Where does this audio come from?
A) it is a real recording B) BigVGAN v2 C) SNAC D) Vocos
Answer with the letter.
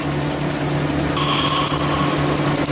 A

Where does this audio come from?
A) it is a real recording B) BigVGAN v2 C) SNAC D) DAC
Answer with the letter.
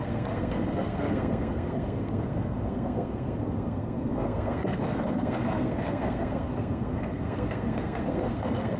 C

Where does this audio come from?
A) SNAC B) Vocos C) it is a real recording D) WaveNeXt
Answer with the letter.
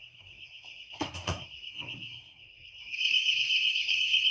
A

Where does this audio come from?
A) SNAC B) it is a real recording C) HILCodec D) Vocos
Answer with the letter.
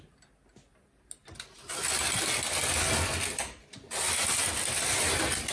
B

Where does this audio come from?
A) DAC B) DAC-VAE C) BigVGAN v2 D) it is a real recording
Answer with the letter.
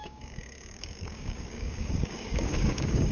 A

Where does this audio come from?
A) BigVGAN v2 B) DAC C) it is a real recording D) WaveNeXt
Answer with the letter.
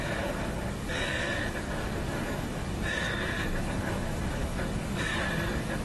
B